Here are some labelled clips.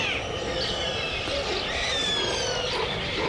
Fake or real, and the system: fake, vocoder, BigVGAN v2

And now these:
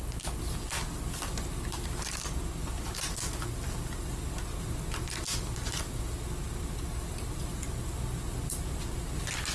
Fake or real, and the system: real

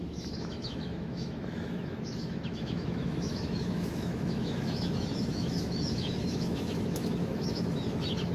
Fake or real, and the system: fake, autoencoder, DAC-VAE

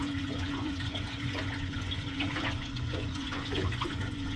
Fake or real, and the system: fake, vocoder, Vocos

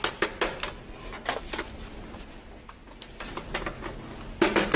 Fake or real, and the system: real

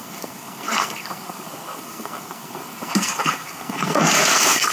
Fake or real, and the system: fake, codec, SNAC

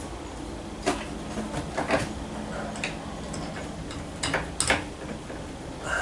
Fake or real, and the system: real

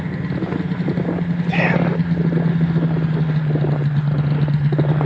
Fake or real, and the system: real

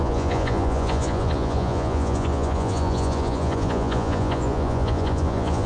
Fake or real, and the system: fake, vocoder, Vocos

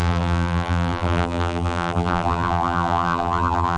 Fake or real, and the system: fake, vocoder, BigVGAN v2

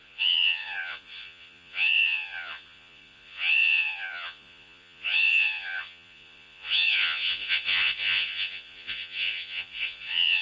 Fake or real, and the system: fake, vocoder, Vocos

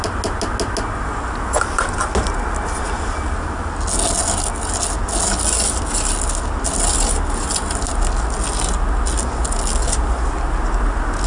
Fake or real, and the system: real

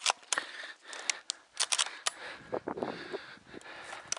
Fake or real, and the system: real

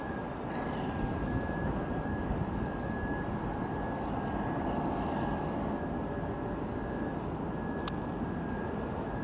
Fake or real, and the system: real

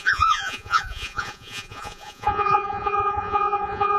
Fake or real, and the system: fake, vocoder, Vocos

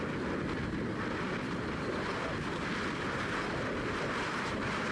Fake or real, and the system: real